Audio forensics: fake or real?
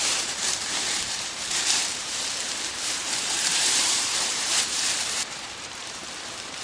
fake